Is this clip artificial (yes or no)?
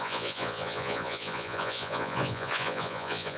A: yes